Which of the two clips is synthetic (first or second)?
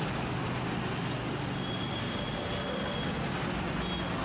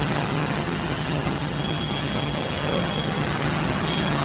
second